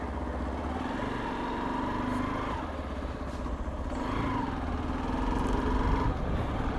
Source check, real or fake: real